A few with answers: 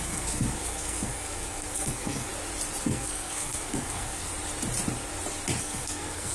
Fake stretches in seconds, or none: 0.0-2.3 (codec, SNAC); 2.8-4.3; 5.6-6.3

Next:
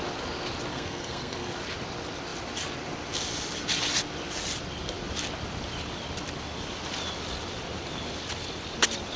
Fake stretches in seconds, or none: 0.7-1.5 (codec, SNAC)

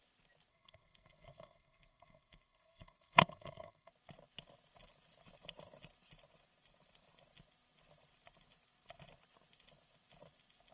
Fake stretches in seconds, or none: 0.5-3.9 (codec, SNAC)

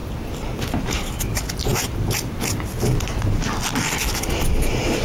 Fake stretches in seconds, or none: none

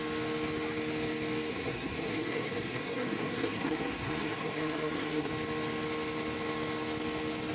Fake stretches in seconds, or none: 1.5-5.3 (codec, SNAC)

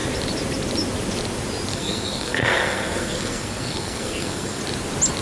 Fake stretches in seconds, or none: 1.7-4.6 (codec, SNAC)